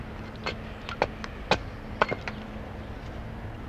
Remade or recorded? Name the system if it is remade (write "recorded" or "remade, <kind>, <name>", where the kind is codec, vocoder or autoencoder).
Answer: recorded